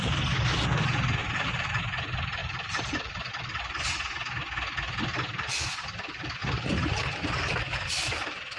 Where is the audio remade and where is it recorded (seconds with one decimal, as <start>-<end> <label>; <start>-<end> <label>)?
0.0-1.2 recorded; 1.2-1.8 remade; 1.8-2.4 recorded; 2.4-3.3 remade; 3.3-6.4 recorded; 6.4-7.5 remade; 7.5-8.6 recorded